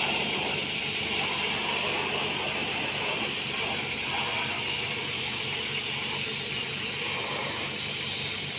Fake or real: real